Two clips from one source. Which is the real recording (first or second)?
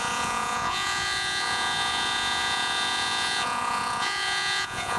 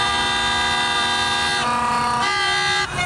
second